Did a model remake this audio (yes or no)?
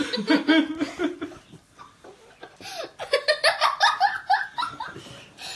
no